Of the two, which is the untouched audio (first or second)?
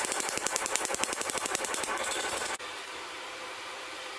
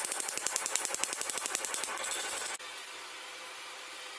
second